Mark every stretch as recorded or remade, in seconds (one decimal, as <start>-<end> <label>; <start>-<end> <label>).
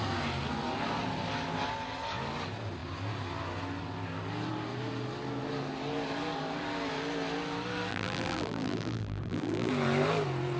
0.0-7.9 recorded; 7.9-9.7 remade; 9.7-10.6 recorded